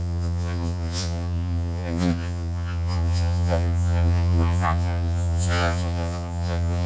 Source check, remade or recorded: remade